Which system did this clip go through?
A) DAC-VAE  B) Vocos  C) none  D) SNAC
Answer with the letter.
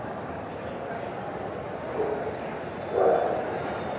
C